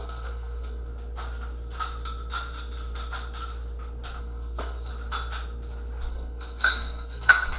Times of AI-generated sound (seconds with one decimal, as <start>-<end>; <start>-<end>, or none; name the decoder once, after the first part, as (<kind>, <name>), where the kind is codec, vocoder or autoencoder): 0.0-0.9 (codec, SNAC); 4.2-4.9; 6.1-7.6